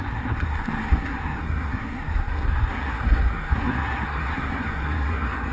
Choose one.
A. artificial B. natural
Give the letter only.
A